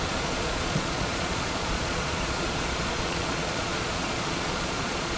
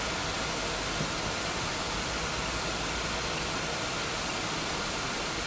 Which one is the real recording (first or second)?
second